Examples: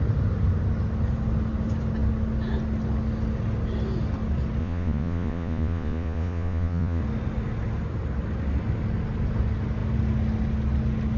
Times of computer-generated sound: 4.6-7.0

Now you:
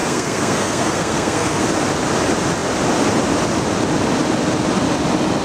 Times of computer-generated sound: 0.0-1.6

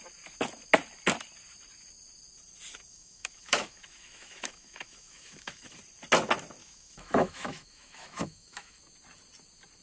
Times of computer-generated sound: 2.9-5.7; 6.6-8.8

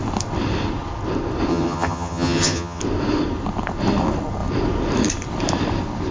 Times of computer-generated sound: 1.5-2.8

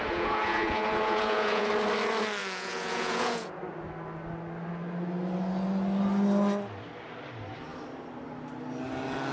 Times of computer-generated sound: 0.0-1.7; 2.4-3.6

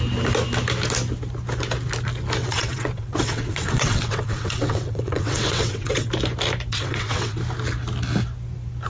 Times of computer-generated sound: 2.4-6.1; 6.7-7.4

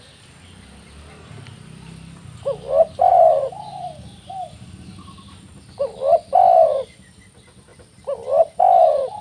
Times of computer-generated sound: 3.1-5.8